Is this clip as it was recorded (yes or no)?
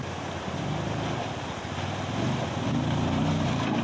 yes